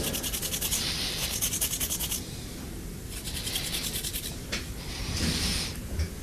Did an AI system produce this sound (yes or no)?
no